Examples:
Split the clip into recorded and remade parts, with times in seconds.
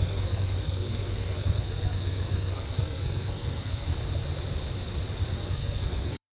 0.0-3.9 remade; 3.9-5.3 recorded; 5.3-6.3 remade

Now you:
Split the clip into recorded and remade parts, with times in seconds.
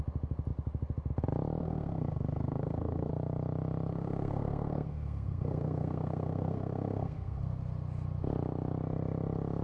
0.0-1.6 recorded; 1.6-3.1 remade; 3.1-3.9 recorded; 3.9-7.4 remade; 7.4-9.6 recorded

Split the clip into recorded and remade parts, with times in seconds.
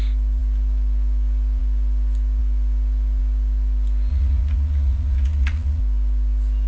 0.0-4.1 recorded; 4.1-5.8 remade; 5.8-6.7 recorded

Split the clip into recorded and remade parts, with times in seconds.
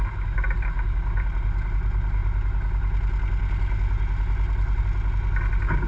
0.0-5.9 recorded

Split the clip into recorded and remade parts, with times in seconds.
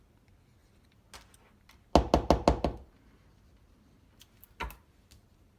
0.0-5.6 recorded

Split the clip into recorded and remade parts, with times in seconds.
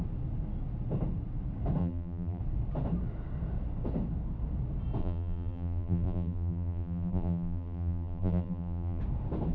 0.0-1.8 recorded; 1.8-2.4 remade; 2.4-5.0 recorded; 5.0-9.0 remade; 9.0-9.5 recorded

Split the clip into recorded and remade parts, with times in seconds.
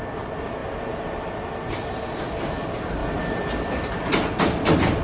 0.0-5.0 recorded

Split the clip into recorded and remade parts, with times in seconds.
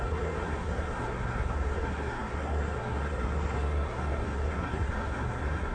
0.0-5.7 remade